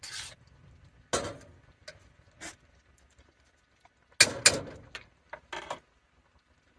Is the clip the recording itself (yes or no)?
yes